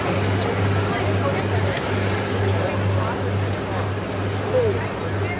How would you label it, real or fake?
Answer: real